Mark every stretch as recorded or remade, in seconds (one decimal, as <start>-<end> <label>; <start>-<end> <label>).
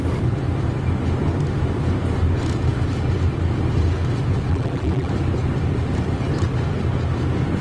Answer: 0.0-4.5 recorded; 4.5-5.1 remade; 5.1-7.6 recorded